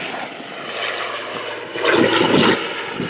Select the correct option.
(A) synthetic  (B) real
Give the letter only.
B